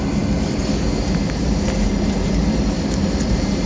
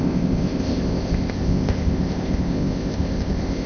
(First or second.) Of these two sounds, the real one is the first